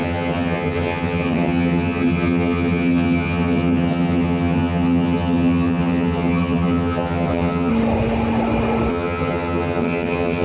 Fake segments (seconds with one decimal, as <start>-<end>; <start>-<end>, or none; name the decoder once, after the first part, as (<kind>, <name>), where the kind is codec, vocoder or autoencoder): 0.0-7.7 (vocoder, HiFi-GAN); 8.9-10.4